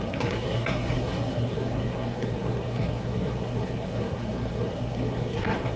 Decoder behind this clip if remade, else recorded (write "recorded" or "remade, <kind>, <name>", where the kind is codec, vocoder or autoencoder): remade, codec, SNAC